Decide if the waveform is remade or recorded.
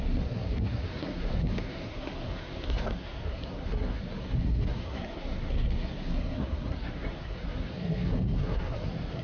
remade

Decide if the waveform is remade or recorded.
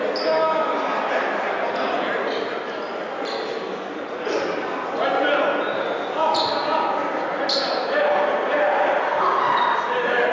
recorded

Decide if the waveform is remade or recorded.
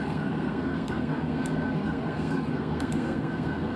remade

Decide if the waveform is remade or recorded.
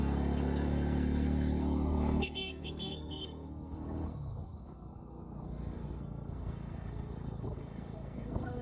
remade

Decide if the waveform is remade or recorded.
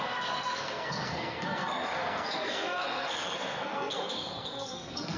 remade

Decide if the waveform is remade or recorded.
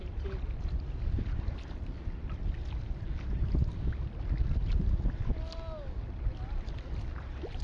recorded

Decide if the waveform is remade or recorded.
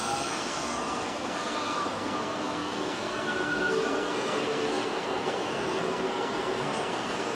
remade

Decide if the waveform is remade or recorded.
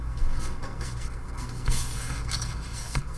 remade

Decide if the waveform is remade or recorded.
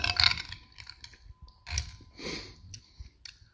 recorded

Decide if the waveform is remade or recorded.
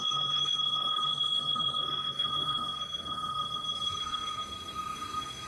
remade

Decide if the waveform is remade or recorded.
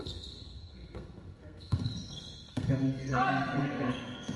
remade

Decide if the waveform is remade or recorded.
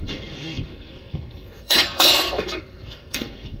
remade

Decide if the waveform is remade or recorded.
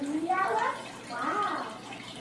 recorded